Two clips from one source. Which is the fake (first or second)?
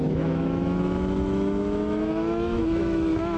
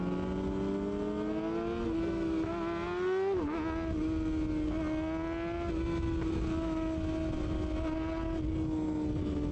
first